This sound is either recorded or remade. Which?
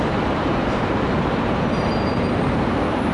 remade